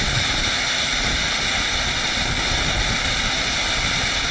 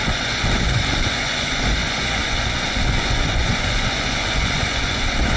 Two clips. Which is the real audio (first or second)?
first